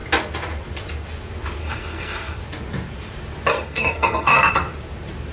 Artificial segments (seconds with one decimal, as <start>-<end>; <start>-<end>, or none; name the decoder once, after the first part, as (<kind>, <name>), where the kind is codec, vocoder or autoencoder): 1.6-2.4 (codec, SNAC); 3.5-4.5